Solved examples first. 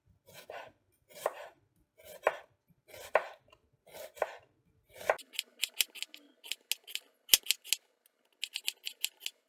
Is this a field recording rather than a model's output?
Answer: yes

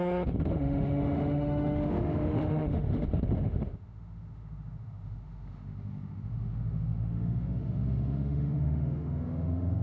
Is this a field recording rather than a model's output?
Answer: no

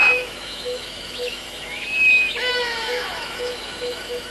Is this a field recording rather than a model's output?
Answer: no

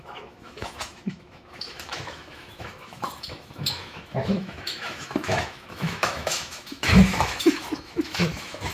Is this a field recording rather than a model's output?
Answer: no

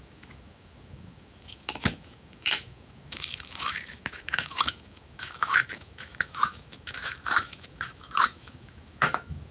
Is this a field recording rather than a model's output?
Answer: no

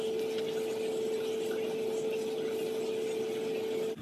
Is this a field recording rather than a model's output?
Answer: yes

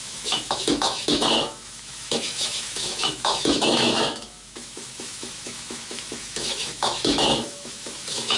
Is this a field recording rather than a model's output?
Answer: no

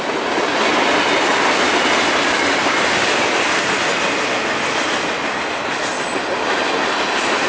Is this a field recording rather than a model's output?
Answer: yes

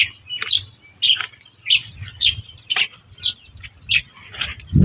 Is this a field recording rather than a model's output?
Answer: yes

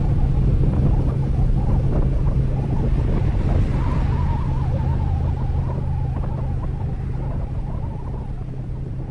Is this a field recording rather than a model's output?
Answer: yes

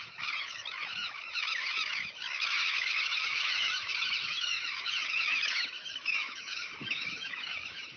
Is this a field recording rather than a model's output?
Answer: no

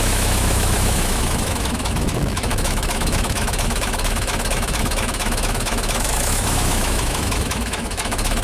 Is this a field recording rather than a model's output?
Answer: no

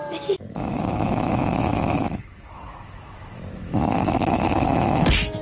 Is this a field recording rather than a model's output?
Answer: no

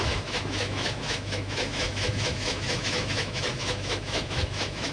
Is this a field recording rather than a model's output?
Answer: no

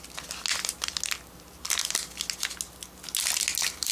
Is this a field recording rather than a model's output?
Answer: yes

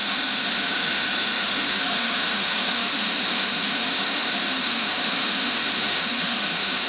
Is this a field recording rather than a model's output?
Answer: no